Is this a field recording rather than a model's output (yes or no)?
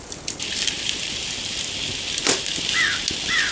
yes